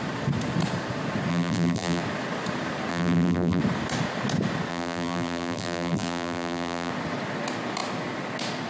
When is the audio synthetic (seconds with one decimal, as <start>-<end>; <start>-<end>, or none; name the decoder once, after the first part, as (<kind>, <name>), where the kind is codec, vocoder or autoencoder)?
1.3-2.0 (vocoder, BigVGAN v2); 2.9-3.6; 4.7-6.9